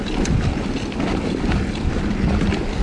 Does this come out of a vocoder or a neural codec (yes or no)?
no